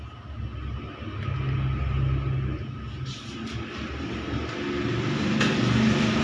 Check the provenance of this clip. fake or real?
real